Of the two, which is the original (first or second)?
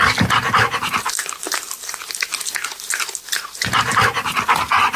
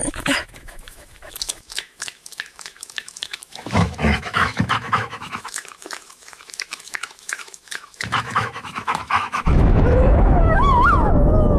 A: first